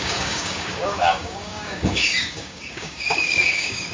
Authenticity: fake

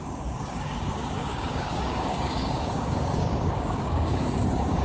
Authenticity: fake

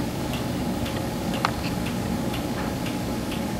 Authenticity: fake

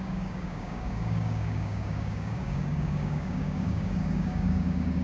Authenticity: fake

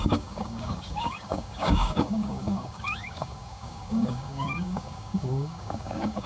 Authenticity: fake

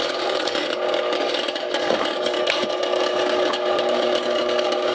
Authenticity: fake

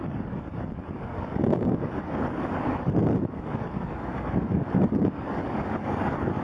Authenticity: fake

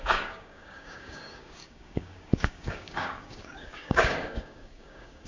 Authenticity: fake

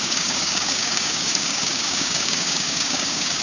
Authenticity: fake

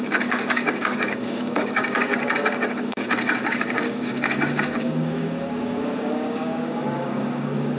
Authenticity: fake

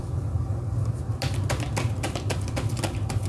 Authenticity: real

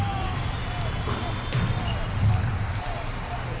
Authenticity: real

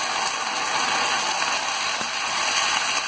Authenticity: real